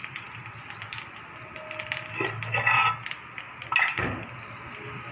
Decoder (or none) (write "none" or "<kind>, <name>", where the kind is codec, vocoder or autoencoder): none